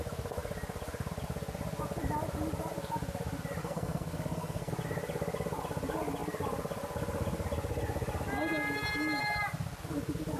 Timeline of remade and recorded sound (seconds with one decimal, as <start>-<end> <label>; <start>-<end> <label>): 0.0-3.6 recorded; 3.6-4.7 remade; 4.7-10.4 recorded

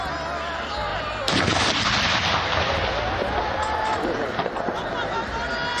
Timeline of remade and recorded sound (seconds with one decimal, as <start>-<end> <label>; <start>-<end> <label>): 0.0-0.9 recorded; 0.9-1.9 remade; 1.9-3.9 recorded; 3.9-4.5 remade; 4.5-5.0 recorded; 5.0-5.8 remade

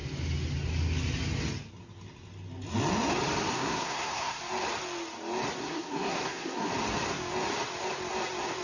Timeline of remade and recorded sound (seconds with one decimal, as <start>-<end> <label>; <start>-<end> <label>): 0.0-3.5 recorded; 3.5-4.4 remade; 4.4-5.6 recorded; 5.6-6.7 remade; 6.7-8.6 recorded

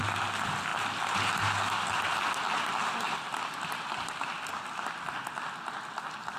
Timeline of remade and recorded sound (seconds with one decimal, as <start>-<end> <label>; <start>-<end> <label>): 0.0-6.4 recorded

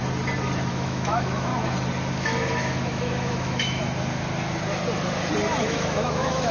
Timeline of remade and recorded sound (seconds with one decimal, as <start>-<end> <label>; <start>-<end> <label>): 0.0-0.7 recorded; 0.7-1.5 remade; 1.5-2.1 recorded; 2.1-3.8 remade; 3.8-5.6 recorded; 5.6-6.5 remade

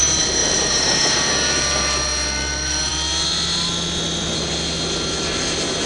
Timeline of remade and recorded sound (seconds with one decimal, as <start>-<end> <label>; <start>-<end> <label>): 0.0-0.4 recorded; 0.4-1.3 remade; 1.3-5.9 recorded